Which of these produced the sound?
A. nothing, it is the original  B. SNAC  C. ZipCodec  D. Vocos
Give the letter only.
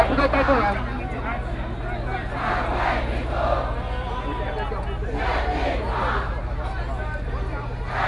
A